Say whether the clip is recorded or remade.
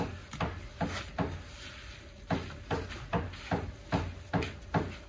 recorded